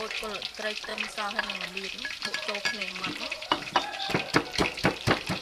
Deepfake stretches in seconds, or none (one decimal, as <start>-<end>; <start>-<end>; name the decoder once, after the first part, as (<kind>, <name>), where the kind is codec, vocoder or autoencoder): 0.9-4.1 (vocoder, BigVGAN v2); 4.6-5.4